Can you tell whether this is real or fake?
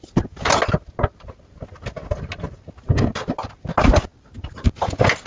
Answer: real